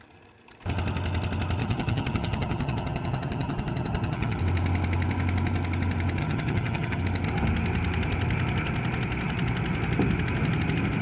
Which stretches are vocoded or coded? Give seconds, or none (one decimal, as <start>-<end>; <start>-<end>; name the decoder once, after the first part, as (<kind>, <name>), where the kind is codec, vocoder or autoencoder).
1.6-4.4 (vocoder, HiFi-GAN); 6.2-7.0